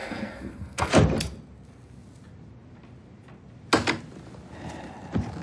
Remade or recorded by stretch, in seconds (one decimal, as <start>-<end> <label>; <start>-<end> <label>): 0.0-0.9 remade; 0.9-5.4 recorded